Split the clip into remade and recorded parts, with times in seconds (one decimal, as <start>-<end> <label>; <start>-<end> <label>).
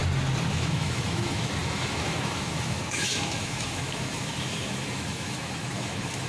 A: 0.0-0.5 recorded; 0.5-6.3 remade